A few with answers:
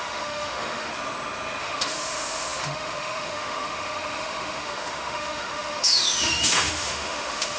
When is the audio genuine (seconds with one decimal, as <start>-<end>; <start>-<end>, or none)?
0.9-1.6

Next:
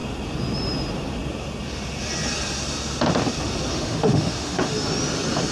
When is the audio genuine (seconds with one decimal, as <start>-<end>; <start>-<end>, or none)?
0.0-3.7; 4.7-5.5

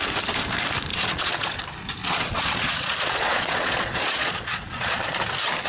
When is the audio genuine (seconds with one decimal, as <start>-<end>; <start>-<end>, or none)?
0.0-0.9; 1.6-2.0; 4.9-5.7

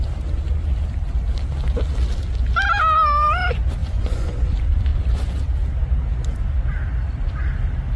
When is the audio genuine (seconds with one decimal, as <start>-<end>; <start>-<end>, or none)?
0.0-3.8; 4.5-8.0

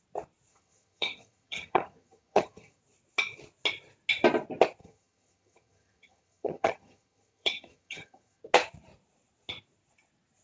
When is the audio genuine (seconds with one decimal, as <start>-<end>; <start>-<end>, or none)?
0.0-0.5; 2.8-4.8; 8.4-10.4